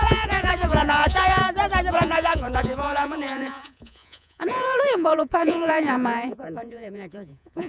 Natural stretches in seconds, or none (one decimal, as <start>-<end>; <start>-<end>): 1.4-1.9